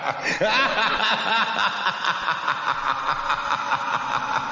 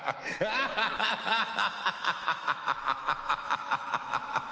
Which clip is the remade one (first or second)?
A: second